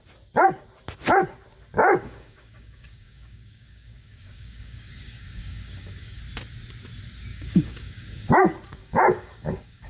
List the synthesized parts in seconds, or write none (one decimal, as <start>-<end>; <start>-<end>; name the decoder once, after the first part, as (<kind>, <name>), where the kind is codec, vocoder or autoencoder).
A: 1.8-6.2 (codec, DAC); 7.3-8.3; 8.8-9.9